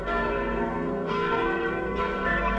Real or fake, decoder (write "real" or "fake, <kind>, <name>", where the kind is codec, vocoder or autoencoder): fake, codec, SNAC